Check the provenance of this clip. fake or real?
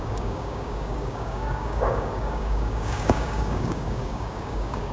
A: fake